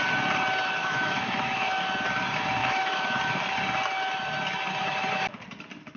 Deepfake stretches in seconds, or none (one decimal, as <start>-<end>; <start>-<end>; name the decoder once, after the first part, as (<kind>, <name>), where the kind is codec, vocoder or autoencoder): 0.8-1.7 (autoencoder, DAC-VAE); 2.6-3.2